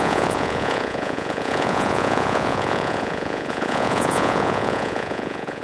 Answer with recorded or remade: remade